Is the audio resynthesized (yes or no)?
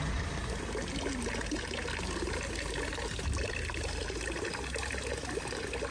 no